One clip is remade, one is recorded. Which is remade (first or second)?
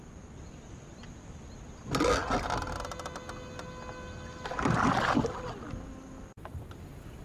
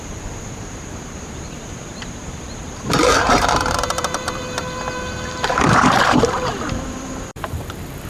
second